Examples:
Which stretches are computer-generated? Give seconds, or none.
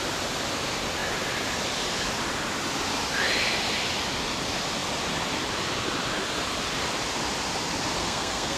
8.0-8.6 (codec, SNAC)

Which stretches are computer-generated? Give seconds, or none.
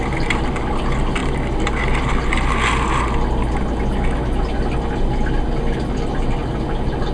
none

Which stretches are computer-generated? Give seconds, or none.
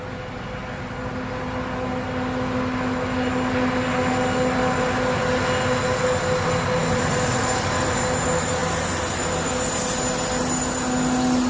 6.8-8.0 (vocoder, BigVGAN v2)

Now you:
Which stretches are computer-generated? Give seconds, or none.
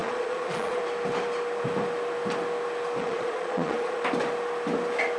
0.0-0.8 (vocoder, Vocos); 3.0-4.0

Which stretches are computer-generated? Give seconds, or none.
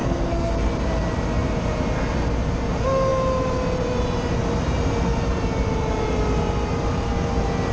0.0-0.5 (codec, SNAC)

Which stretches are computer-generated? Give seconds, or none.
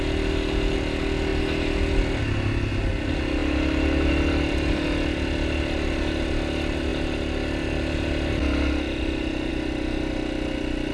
none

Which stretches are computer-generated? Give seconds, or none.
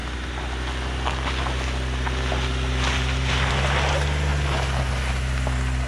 none